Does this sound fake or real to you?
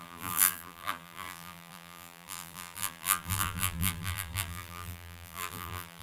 fake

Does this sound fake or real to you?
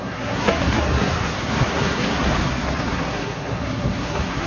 fake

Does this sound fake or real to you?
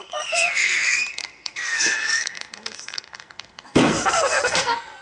fake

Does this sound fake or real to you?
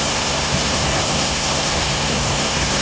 fake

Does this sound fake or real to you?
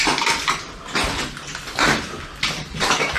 real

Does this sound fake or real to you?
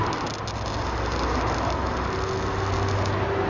real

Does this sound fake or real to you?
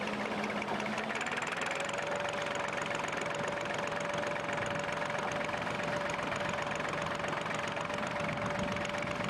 real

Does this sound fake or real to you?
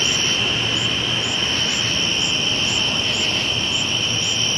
real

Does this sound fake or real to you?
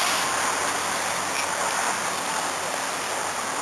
real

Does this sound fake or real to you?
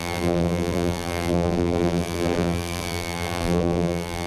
fake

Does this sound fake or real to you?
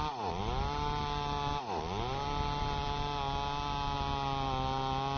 real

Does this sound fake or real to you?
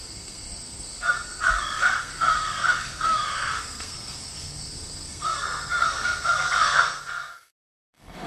fake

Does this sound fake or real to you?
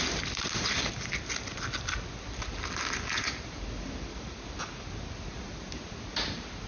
real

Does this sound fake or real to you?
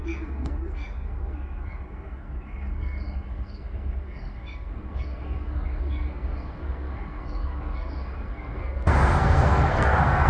fake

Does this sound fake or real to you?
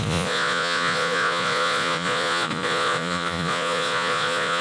fake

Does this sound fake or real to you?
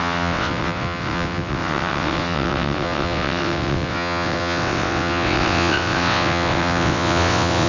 fake